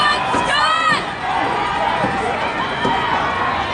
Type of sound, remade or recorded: remade